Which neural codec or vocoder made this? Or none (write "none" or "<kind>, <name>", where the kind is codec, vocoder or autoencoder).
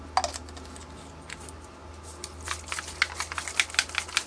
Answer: none